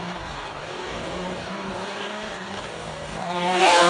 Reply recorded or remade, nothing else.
remade